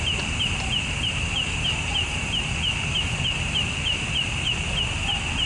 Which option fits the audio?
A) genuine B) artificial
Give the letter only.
A